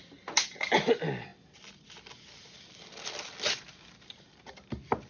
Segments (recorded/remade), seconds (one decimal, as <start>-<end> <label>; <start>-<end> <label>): 0.0-5.1 recorded

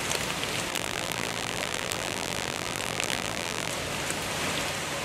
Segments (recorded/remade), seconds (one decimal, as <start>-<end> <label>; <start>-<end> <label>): 0.0-0.7 recorded; 0.7-3.7 remade; 3.7-5.0 recorded

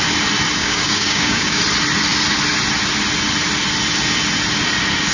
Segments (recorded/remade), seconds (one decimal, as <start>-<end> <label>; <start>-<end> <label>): 0.0-0.6 recorded; 0.6-1.6 remade; 1.6-5.1 recorded

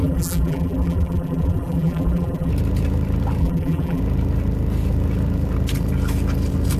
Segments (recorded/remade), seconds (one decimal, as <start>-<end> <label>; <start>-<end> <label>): 0.0-2.5 remade; 2.5-3.4 recorded; 3.4-4.0 remade; 4.0-6.8 recorded

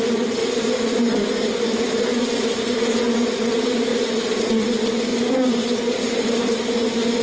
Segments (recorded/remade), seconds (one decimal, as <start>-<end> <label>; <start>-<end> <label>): 0.0-0.4 recorded; 0.4-3.0 remade; 3.0-3.9 recorded; 3.9-4.5 remade; 4.5-5.1 recorded; 5.1-7.2 remade